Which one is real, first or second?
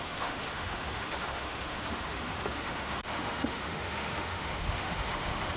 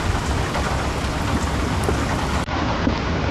second